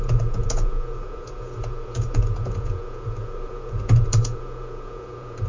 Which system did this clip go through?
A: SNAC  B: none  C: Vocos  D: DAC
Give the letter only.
C